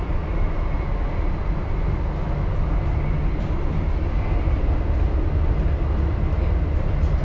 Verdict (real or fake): real